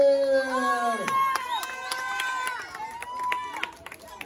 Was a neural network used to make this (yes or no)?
no